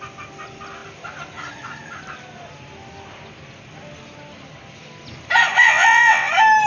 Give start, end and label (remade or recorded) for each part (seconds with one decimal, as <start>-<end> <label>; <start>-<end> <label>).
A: 0.0-5.6 recorded; 5.6-6.3 remade; 6.3-6.7 recorded